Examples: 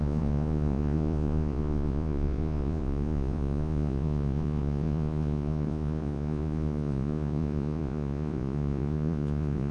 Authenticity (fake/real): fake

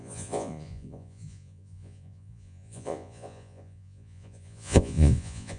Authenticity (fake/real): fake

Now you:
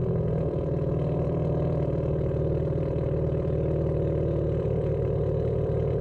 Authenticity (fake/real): fake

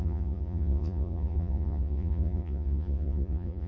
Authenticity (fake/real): fake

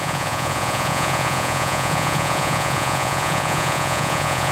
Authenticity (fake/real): fake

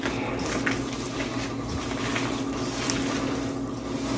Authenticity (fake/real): real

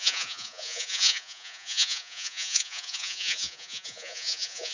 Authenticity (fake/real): fake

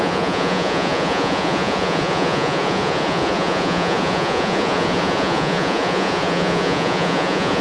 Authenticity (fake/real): fake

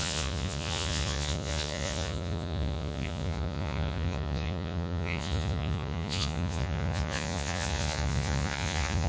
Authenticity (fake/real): fake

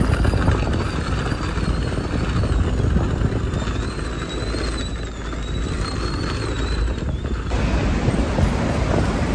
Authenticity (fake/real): real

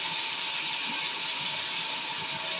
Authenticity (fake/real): real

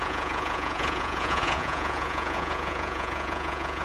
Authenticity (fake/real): fake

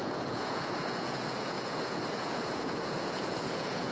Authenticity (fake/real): fake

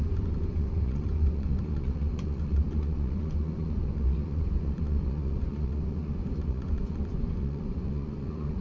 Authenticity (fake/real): fake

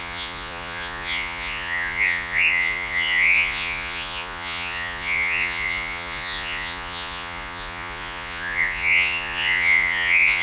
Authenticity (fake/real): fake